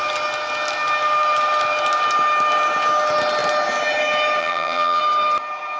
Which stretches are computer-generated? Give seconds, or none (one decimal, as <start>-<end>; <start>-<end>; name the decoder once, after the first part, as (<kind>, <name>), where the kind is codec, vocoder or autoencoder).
4.4-5.0 (vocoder, HiFi-GAN)